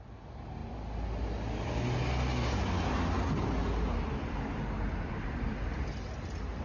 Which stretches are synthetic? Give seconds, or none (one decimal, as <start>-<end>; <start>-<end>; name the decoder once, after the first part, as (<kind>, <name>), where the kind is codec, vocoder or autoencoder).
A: none